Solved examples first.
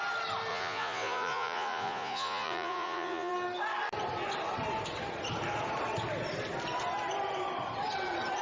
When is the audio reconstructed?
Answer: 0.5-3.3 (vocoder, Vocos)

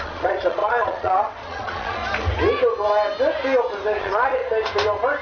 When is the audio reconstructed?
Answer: 0.0-2.0 (vocoder, Vocos); 4.0-4.4

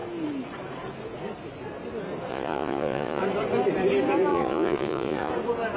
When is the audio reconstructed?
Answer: 2.3-3.2 (vocoder, Vocos); 4.3-5.3

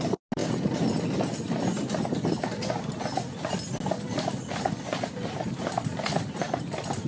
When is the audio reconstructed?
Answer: none

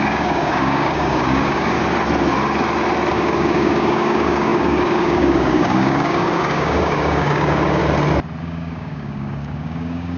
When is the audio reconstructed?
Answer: 0.0-1.8 (codec, DAC); 3.1-7.8; 8.4-10.2

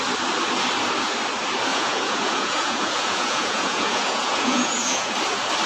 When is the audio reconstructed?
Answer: 1.7-5.1 (vocoder, Vocos)

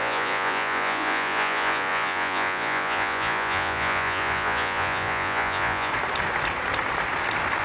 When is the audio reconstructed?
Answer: 0.0-5.9 (vocoder, Vocos)